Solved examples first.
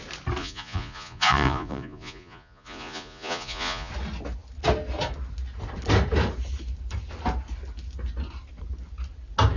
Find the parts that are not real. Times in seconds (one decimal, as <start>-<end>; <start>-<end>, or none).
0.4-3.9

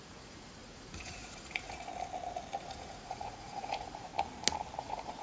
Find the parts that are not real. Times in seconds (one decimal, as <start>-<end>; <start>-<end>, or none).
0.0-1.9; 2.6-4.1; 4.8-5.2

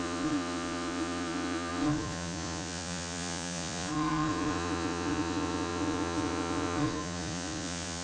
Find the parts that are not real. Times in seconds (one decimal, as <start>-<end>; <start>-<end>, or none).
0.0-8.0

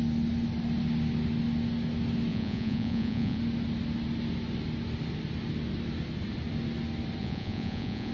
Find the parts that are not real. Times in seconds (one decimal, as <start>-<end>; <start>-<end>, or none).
2.3-3.4; 7.2-8.1

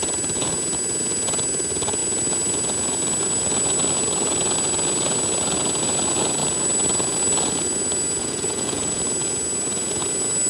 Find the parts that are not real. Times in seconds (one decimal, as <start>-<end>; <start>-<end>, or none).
8.2-9.0